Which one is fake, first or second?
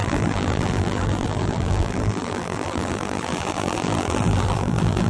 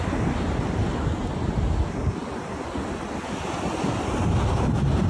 first